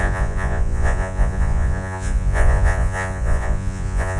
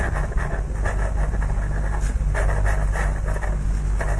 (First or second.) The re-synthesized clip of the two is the first